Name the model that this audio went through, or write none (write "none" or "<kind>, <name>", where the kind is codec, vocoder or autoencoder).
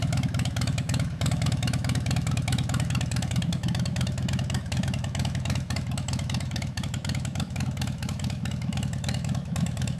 autoencoder, DAC-VAE